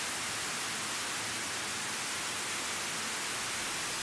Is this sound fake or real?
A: real